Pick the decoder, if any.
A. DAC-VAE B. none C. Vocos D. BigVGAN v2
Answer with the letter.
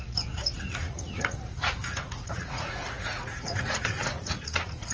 C